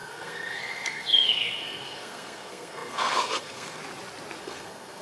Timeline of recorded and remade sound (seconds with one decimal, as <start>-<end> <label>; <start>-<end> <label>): 0.0-3.8 remade; 3.8-4.4 recorded; 4.4-5.0 remade